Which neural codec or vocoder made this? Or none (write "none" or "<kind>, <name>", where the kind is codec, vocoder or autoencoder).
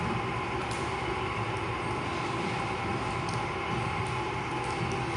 none